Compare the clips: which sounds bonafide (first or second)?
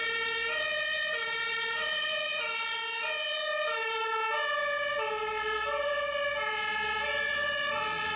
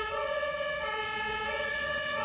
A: first